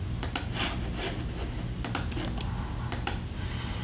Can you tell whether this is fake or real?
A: real